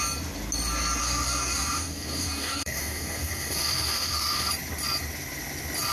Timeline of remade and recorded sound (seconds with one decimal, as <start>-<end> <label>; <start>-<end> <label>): 0.0-1.0 recorded; 1.0-4.5 remade; 4.5-5.9 recorded